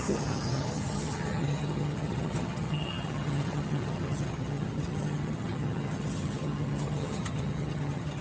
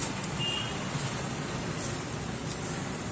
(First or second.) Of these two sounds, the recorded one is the second